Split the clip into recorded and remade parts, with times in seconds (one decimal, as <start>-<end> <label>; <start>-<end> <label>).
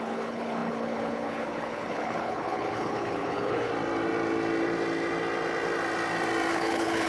0.0-3.7 remade; 3.7-6.5 recorded; 6.5-7.1 remade